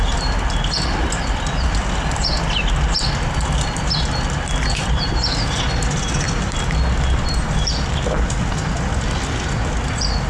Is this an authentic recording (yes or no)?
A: yes